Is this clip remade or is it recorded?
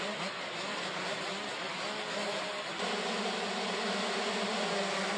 recorded